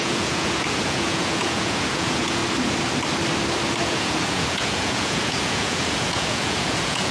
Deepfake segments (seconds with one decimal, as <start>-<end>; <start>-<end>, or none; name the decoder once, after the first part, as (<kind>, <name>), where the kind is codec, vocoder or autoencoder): 0.0-2.4 (vocoder, Vocos); 3.8-7.1